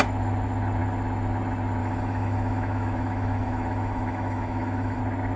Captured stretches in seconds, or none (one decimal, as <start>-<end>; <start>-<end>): 0.0-1.8; 5.0-5.4